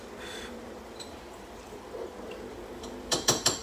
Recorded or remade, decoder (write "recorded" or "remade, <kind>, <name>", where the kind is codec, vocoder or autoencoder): remade, vocoder, BigVGAN v2